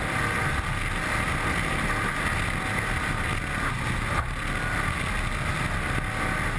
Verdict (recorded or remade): recorded